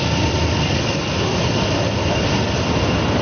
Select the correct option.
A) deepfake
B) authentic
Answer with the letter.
B